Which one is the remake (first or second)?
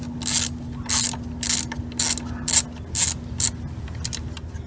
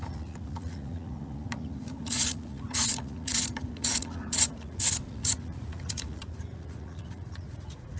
second